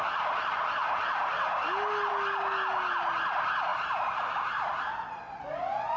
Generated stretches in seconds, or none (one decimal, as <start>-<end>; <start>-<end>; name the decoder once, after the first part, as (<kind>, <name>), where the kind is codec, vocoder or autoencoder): none